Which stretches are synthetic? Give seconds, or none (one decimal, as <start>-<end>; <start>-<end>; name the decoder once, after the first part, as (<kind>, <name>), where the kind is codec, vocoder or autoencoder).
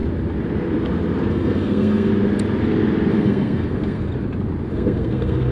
1.3-2.1 (codec, SNAC); 3.1-4.1; 4.7-5.5